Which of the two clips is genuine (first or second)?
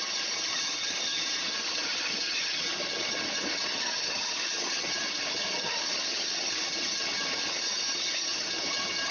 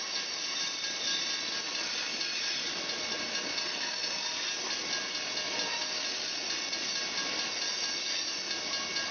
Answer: second